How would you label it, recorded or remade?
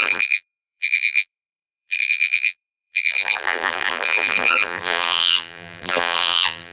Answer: remade